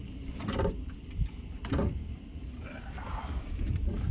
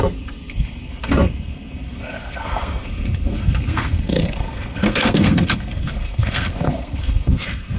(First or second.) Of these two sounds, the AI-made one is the second